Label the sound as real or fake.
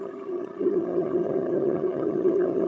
fake